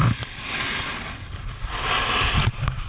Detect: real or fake real